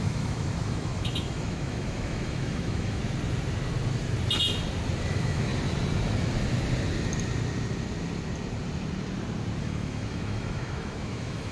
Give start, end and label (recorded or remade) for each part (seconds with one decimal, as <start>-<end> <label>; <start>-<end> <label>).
0.0-3.0 remade; 3.0-5.1 recorded; 5.1-5.5 remade; 5.5-9.6 recorded; 9.6-11.5 remade